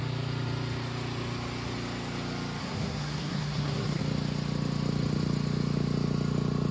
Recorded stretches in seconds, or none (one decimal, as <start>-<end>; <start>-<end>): 0.0-2.6; 4.0-6.7